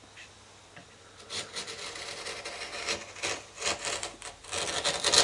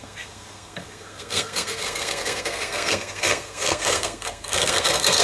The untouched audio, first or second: first